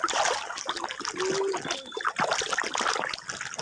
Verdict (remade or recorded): recorded